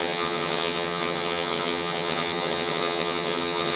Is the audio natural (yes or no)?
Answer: no